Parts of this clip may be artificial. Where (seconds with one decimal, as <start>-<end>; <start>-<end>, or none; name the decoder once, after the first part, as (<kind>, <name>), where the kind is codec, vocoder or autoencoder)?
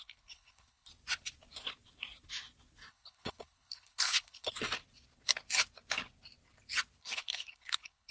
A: 0.0-0.9 (codec, HILCodec); 2.9-4.5; 7.0-8.1